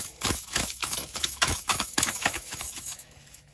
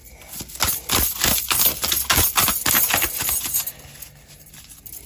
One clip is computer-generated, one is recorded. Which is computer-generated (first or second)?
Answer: first